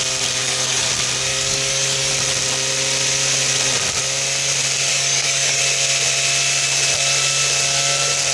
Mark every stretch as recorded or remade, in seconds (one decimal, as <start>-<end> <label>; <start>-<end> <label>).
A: 0.0-0.4 recorded; 0.4-0.9 remade; 0.9-1.3 recorded; 1.3-2.1 remade; 2.1-4.9 recorded; 4.9-5.6 remade; 5.6-8.3 recorded